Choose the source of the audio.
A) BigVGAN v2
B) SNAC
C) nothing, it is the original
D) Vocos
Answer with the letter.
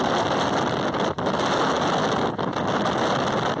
C